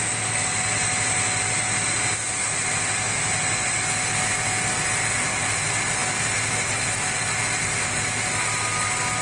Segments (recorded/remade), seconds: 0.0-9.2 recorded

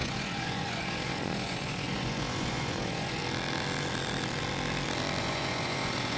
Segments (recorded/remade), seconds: 0.0-3.2 remade; 3.2-5.2 recorded; 5.2-6.2 remade

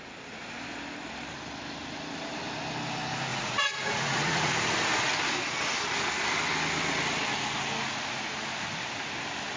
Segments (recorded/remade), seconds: 0.0-3.3 recorded; 3.3-4.5 remade; 4.5-9.6 recorded

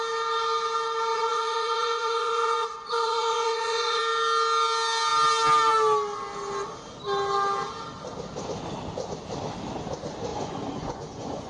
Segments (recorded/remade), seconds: 0.0-1.1 recorded; 1.1-4.0 remade; 4.0-10.3 recorded; 10.3-11.5 remade

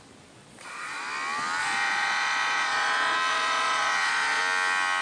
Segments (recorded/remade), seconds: 0.0-0.4 recorded; 0.4-1.0 remade; 1.0-1.6 recorded; 1.6-4.4 remade; 4.4-5.0 recorded

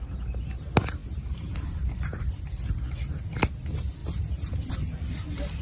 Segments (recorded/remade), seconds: 0.0-5.6 recorded